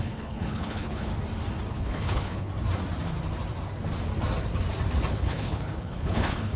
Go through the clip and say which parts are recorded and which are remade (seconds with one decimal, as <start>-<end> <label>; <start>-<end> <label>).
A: 0.0-1.1 remade; 1.1-1.7 recorded; 1.7-2.5 remade; 2.5-5.1 recorded; 5.1-6.6 remade